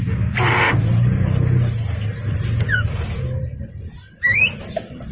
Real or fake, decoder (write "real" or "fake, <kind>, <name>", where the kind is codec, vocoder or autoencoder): real